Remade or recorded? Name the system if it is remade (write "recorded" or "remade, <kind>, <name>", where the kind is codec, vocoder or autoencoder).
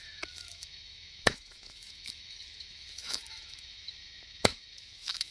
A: remade, autoencoder, DAC-VAE